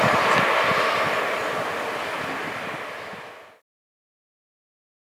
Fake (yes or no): no